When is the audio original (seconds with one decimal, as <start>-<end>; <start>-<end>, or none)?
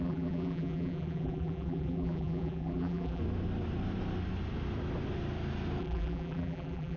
3.2-5.8